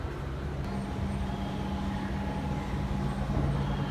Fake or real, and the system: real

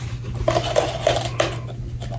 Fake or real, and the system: real